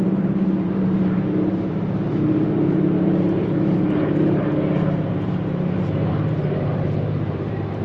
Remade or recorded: remade